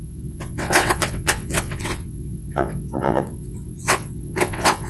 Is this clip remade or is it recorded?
remade